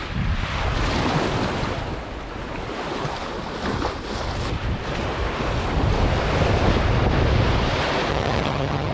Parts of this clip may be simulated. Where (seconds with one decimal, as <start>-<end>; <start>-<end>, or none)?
8.1-8.9